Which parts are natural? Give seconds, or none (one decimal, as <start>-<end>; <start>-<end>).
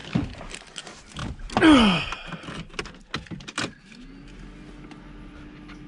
0.6-5.9